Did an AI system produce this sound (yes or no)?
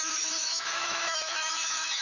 yes